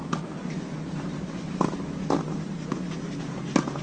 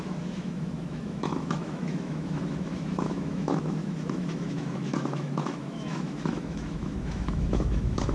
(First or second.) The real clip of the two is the first